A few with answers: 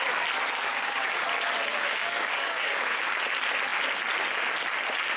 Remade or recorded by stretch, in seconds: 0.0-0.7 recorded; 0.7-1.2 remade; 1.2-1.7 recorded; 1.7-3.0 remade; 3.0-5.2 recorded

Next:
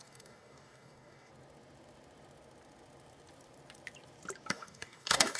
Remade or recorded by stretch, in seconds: 0.0-1.3 remade; 1.3-4.5 recorded; 4.5-5.4 remade

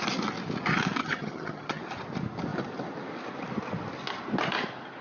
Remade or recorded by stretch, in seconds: 0.0-1.0 recorded; 1.0-1.8 remade; 1.8-5.0 recorded

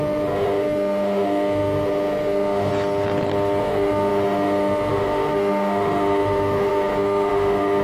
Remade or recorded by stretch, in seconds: 0.0-2.7 remade; 2.7-3.6 recorded; 3.6-7.8 remade

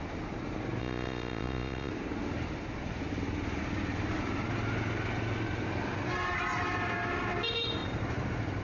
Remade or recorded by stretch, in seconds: 0.0-0.8 recorded; 0.8-1.9 remade; 1.9-8.6 recorded

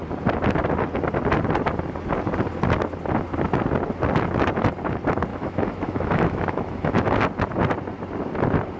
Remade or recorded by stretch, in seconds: 0.0-5.3 recorded; 5.3-7.2 remade; 7.2-8.8 recorded

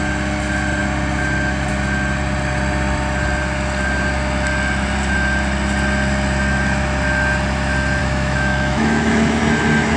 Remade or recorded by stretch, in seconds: 0.0-8.0 recorded; 8.0-9.4 remade; 9.4-10.0 recorded